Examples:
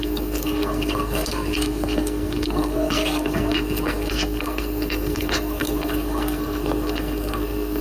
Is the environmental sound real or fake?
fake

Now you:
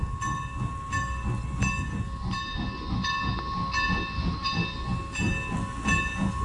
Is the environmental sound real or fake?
real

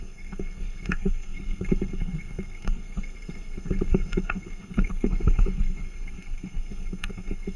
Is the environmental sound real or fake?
fake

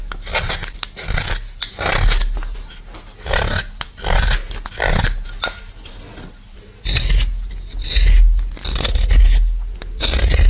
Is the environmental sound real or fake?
real